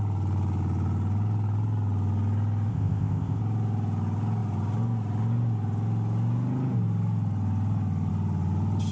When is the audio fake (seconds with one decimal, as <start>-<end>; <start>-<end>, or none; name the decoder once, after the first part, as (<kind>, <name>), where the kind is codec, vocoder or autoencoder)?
2.7-3.4 (codec, ZipCodec)